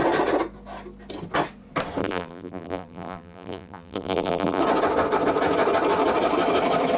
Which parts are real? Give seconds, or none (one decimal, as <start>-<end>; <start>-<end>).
0.0-2.0; 4.6-7.0